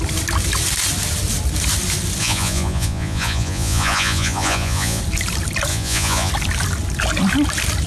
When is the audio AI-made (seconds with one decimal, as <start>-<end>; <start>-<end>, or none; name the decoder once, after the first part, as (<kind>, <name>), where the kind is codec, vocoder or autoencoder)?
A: 2.2-5.0 (vocoder, Vocos); 5.7-6.3